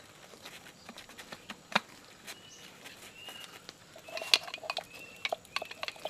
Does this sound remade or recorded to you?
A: recorded